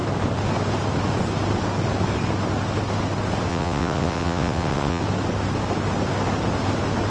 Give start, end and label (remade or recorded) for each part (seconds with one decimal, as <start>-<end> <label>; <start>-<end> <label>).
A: 0.0-3.5 recorded; 3.5-5.0 remade; 5.0-7.1 recorded

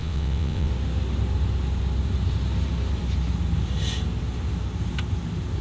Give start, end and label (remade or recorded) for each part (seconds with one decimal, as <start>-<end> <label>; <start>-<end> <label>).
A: 0.0-0.7 remade; 0.7-5.6 recorded